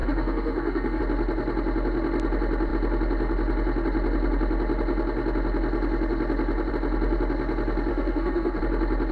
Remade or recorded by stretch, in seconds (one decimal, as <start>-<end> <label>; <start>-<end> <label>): 0.0-1.0 remade; 1.0-7.9 recorded; 7.9-8.6 remade; 8.6-9.1 recorded